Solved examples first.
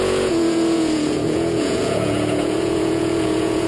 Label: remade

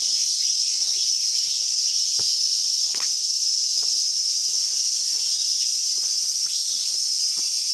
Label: remade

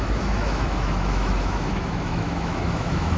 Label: remade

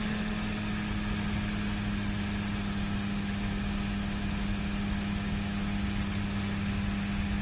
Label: recorded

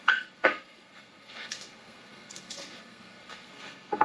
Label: remade